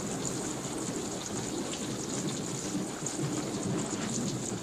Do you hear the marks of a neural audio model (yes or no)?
no